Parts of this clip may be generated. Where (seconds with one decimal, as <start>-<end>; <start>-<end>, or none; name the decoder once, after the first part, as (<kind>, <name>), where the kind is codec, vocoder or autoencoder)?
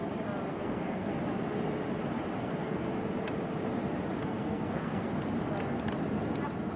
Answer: 0.5-1.2 (codec, SNAC); 2.4-2.9; 4.2-5.1